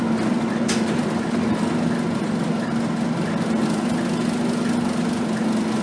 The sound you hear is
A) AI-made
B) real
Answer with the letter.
B